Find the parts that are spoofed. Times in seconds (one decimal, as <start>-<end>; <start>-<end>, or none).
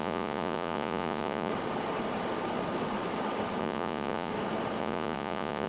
0.0-1.5; 3.6-4.3; 4.8-5.7